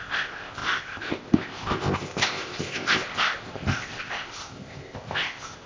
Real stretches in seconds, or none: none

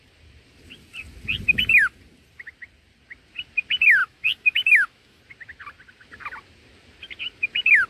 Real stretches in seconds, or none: 0.0-4.0; 5.2-7.9

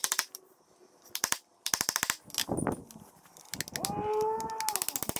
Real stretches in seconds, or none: 1.7-5.2

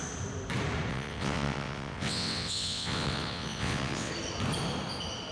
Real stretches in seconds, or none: 0.0-0.9; 4.1-5.3

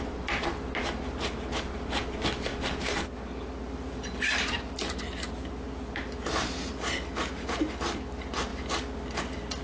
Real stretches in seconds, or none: none

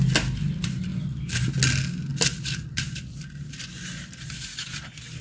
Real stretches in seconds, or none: 0.0-5.2

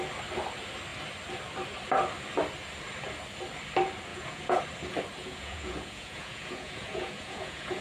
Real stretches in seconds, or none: 0.0-4.1; 4.6-5.2

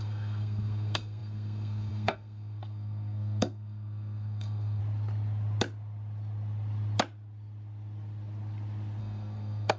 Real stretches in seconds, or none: 4.8-9.0